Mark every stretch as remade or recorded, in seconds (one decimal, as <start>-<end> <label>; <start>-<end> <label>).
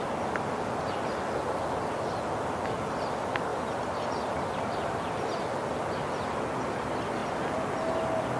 0.0-3.5 recorded; 3.5-5.0 remade; 5.0-8.4 recorded